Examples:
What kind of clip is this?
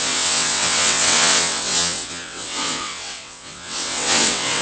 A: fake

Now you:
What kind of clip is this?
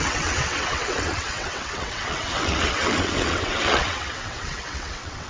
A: fake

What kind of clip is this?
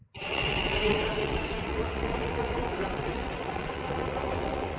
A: fake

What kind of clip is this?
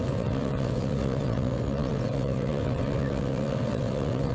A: fake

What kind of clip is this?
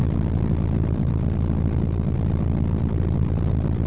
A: real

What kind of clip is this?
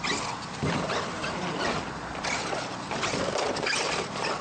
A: real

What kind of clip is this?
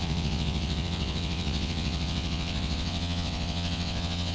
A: fake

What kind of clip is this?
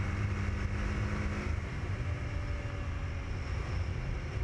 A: real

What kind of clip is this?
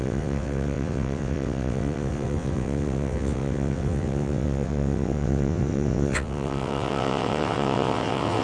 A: fake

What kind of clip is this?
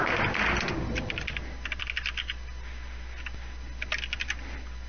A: real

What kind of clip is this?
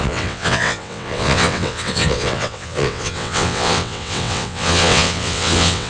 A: fake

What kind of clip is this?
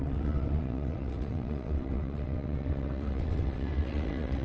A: fake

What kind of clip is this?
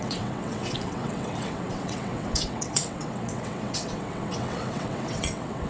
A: fake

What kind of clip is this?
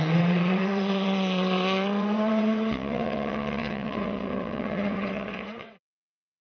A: fake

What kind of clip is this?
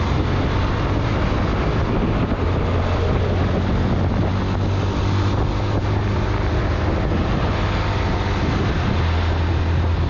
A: real